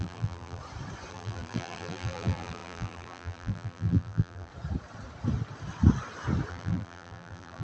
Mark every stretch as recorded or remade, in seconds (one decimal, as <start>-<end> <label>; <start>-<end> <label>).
0.0-0.6 remade; 0.6-1.1 recorded; 1.1-4.5 remade; 4.5-6.5 recorded; 6.5-7.6 remade